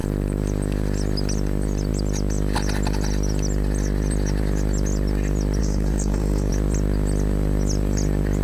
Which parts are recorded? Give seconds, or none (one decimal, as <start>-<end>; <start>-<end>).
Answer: 0.0-5.6; 6.5-8.4